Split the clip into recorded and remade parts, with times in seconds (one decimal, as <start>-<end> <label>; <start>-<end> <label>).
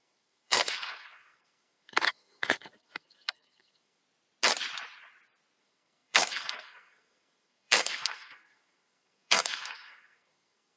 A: 0.0-4.0 remade; 4.0-5.6 recorded; 5.6-10.8 remade